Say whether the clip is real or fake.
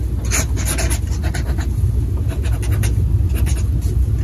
real